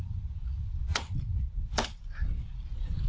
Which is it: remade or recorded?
recorded